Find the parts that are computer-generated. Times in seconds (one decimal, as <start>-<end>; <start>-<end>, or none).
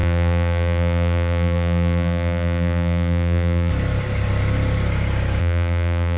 0.0-3.7; 5.4-6.2